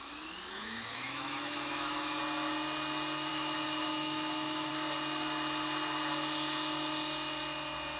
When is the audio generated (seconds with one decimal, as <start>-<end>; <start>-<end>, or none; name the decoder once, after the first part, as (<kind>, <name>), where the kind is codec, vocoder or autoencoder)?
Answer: 0.5-2.2 (autoencoder, DAC-VAE); 3.3-4.7